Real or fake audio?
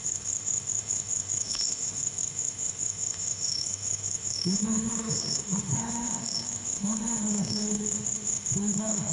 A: fake